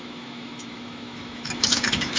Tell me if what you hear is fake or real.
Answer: fake